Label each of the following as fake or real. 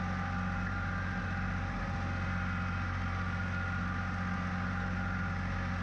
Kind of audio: real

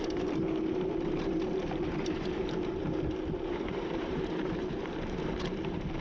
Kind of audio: fake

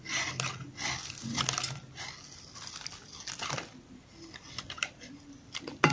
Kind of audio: real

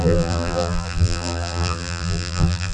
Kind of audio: fake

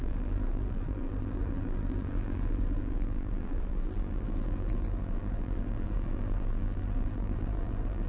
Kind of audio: fake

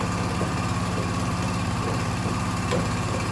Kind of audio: fake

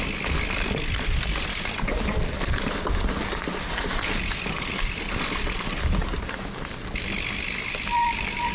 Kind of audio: fake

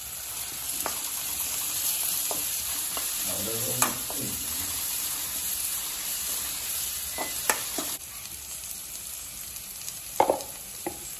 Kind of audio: fake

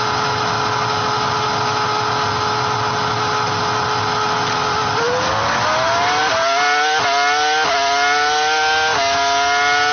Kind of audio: real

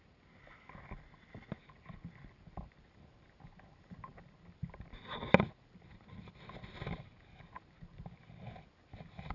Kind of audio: real